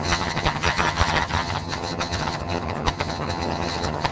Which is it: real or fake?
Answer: fake